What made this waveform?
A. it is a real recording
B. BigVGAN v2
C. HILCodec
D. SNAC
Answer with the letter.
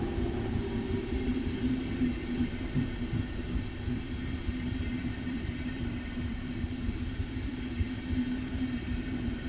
B